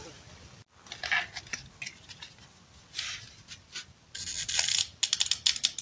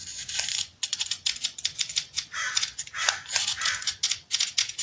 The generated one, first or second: second